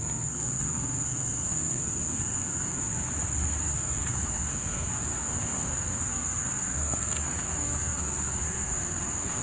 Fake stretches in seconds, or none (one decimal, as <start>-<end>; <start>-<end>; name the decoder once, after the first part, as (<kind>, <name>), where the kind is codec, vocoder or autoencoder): 0.0-2.9 (codec, SNAC); 3.6-9.4